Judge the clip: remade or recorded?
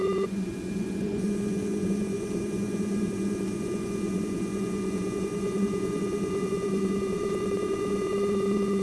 remade